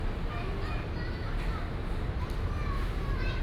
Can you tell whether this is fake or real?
real